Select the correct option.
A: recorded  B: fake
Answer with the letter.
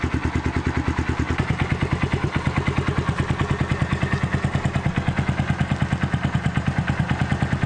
A